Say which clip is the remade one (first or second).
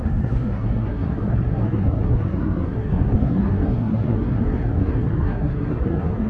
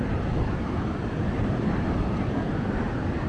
first